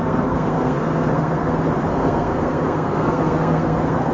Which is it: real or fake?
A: fake